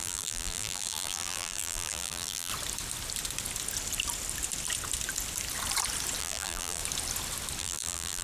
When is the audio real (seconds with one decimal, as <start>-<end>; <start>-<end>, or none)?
2.5-6.2; 6.8-7.6